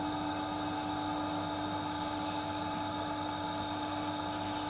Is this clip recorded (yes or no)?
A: yes